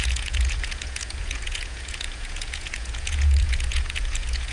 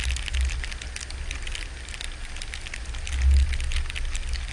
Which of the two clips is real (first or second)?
second